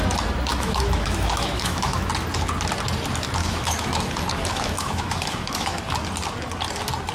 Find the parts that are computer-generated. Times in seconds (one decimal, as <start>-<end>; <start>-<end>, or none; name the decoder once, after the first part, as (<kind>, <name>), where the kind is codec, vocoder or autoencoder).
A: 0.5-2.1 (autoencoder, DAC-VAE); 3.4-3.9; 4.5-5.8